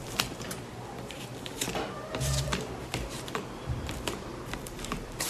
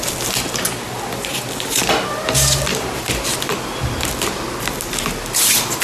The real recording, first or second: second